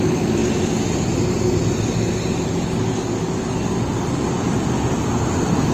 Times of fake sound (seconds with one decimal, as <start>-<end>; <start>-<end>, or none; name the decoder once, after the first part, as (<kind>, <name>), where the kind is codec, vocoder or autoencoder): 2.5-4.3 (codec, DAC)